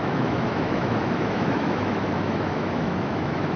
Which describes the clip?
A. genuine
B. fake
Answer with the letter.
B